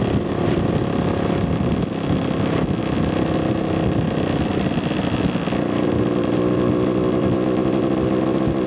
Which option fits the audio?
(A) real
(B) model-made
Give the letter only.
A